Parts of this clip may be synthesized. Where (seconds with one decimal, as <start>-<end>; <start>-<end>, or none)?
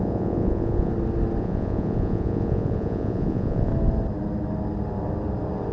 0.0-0.9; 1.4-3.7